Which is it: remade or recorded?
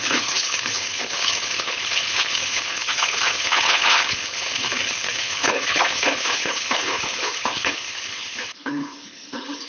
remade